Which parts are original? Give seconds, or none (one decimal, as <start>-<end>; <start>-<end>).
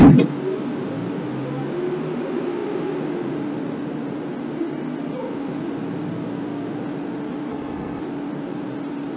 0.0-7.5; 8.0-9.2